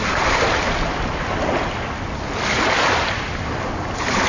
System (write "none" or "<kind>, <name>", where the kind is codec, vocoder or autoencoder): none